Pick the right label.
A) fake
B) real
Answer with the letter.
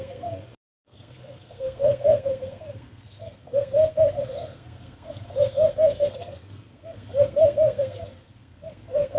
A